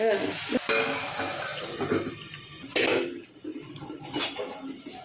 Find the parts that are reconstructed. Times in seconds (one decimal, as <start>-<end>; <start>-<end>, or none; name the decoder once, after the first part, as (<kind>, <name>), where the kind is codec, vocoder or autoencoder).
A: 1.5-2.7 (vocoder, BigVGAN v2); 3.5-5.0